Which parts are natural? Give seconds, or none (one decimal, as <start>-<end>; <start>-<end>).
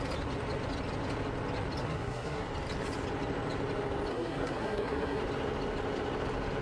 0.0-1.8; 2.5-4.1; 5.2-6.6